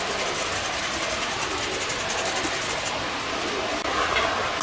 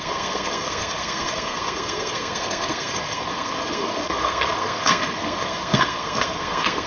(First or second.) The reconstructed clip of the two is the second